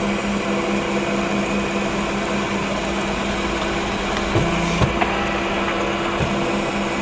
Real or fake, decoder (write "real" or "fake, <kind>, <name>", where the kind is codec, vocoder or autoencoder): real